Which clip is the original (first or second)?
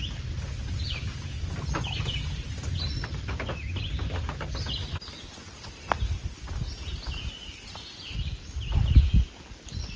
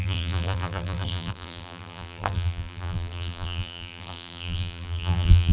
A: first